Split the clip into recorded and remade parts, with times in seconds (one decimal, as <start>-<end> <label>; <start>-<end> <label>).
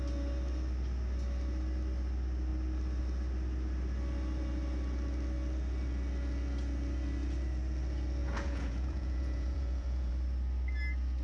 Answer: 0.0-8.2 recorded; 8.2-10.1 remade; 10.1-11.2 recorded